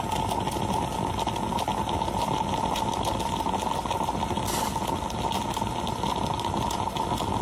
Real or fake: real